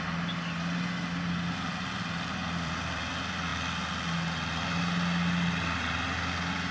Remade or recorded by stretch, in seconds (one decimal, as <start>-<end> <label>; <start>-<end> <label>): 0.0-2.4 recorded; 2.4-3.1 remade; 3.1-6.7 recorded